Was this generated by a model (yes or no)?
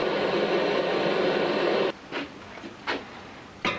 no